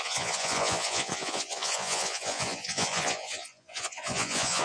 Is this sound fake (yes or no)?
yes